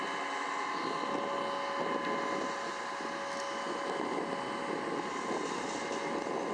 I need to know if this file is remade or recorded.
recorded